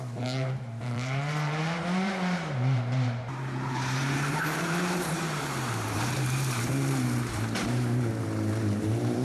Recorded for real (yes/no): no